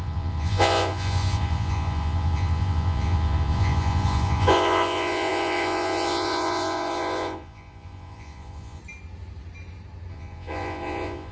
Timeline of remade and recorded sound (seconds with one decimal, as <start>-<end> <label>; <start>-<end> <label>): 0.0-8.8 remade; 8.8-10.1 recorded; 10.1-11.3 remade